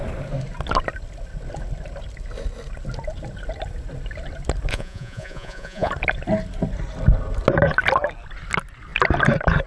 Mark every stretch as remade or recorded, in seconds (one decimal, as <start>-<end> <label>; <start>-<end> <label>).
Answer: 0.0-4.7 recorded; 4.7-5.9 remade; 5.9-9.7 recorded

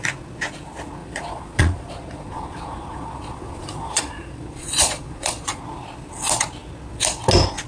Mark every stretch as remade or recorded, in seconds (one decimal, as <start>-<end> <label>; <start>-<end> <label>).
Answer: 0.0-1.0 recorded; 1.0-5.6 remade; 5.6-7.7 recorded

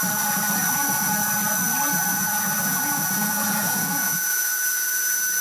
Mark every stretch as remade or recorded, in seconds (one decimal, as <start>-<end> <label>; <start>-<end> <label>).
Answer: 0.0-2.1 recorded; 2.1-5.4 remade

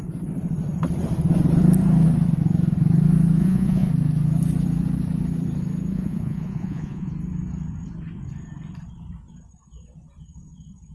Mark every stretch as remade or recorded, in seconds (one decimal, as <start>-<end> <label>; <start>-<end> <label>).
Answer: 0.0-3.4 recorded; 3.4-3.9 remade; 3.9-5.9 recorded; 5.9-7.1 remade; 7.1-10.9 recorded

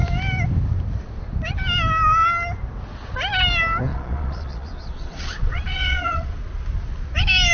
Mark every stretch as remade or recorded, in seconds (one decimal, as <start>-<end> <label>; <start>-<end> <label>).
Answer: 0.0-3.9 recorded; 3.9-6.4 remade; 6.4-7.5 recorded